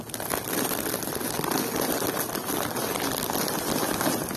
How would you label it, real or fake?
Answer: real